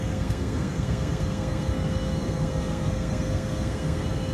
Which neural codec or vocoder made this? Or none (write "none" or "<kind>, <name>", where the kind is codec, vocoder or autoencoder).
codec, SNAC